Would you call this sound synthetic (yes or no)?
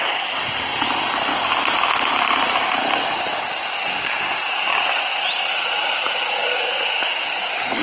no